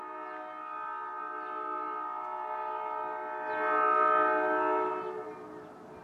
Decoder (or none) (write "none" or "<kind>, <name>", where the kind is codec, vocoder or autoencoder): none